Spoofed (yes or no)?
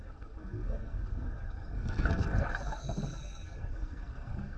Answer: yes